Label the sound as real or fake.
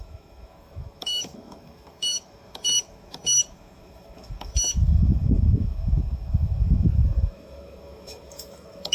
fake